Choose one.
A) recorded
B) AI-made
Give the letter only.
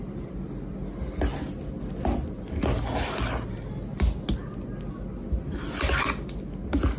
A